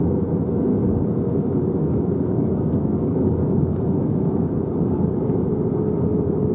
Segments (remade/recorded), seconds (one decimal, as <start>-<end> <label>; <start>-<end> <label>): 0.0-0.7 recorded; 0.7-4.6 remade; 4.6-6.5 recorded